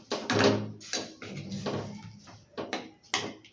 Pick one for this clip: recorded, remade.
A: recorded